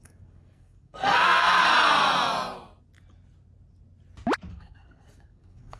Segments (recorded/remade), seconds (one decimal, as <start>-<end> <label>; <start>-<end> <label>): 0.0-1.6 remade; 1.6-4.5 recorded; 4.5-5.8 remade